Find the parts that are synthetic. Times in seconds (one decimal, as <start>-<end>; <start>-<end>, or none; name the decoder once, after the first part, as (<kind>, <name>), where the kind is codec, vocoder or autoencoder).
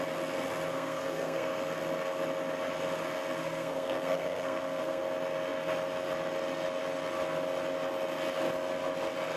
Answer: 0.7-1.6 (codec, SNAC); 3.4-5.0